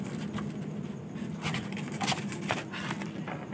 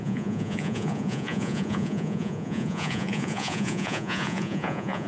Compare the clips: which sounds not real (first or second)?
second